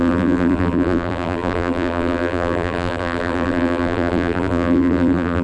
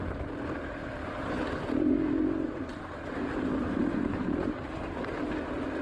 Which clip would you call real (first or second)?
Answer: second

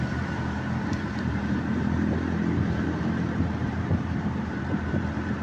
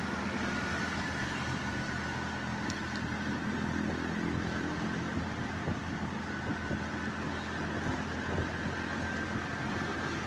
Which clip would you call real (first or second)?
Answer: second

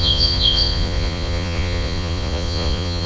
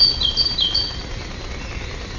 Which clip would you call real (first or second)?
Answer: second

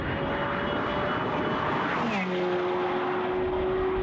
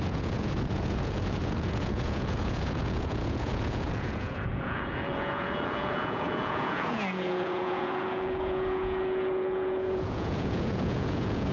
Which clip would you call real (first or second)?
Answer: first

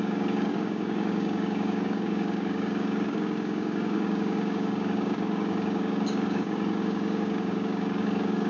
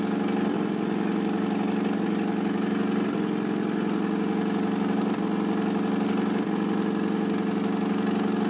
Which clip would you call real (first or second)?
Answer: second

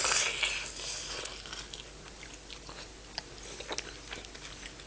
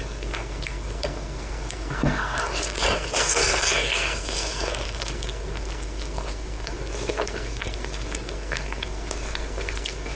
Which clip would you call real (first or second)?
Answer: first